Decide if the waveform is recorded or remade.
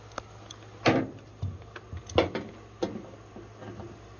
recorded